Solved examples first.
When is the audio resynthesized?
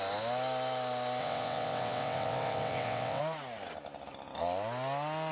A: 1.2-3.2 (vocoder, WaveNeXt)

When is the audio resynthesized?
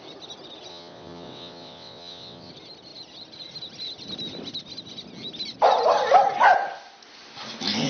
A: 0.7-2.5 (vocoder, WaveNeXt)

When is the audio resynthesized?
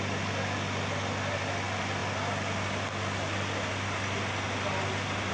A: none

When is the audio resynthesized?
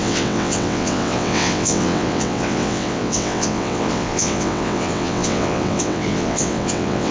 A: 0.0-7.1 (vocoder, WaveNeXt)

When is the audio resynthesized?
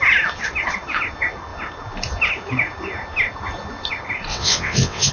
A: 4.3-5.1 (vocoder, WaveNeXt)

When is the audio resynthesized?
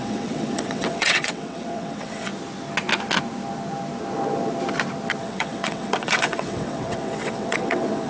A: 0.0-2.3 (vocoder, WaveNeXt); 5.2-8.1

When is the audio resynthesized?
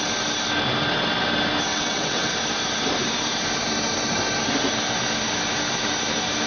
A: 1.7-2.3 (vocoder, WaveNeXt)